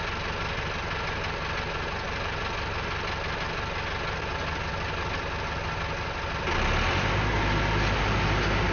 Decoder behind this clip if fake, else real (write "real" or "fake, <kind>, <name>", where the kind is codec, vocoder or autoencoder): real